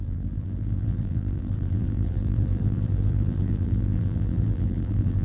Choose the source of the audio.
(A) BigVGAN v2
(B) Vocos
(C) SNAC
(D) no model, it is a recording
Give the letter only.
A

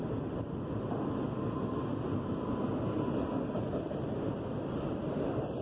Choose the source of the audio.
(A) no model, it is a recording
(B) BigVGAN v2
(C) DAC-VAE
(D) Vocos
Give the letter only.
A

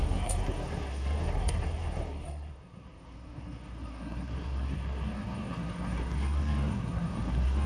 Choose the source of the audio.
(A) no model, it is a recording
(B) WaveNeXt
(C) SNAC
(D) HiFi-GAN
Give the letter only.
C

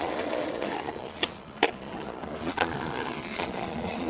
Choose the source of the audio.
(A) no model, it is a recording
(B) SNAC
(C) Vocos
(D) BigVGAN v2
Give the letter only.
C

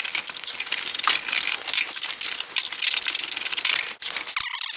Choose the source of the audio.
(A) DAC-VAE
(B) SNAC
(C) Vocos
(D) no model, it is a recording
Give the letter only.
D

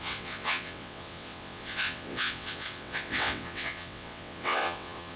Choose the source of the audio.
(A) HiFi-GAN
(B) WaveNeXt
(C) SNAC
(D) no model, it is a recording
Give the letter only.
B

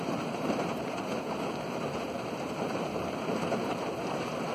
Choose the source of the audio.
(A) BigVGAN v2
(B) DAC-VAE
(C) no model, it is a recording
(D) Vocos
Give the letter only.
A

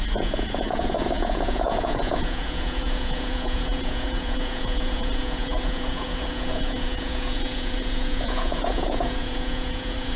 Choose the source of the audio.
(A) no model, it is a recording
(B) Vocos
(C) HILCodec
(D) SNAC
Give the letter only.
B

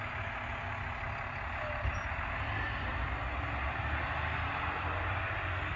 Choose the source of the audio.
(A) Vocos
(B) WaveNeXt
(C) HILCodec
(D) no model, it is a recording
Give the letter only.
D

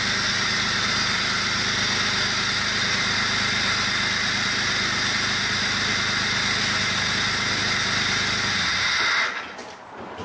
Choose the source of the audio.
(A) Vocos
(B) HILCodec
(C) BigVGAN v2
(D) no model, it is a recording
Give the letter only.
D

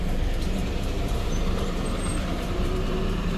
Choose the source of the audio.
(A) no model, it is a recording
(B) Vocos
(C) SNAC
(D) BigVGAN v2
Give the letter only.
D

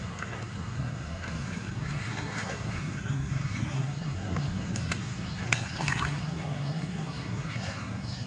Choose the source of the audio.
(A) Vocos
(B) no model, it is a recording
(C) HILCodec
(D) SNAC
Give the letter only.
D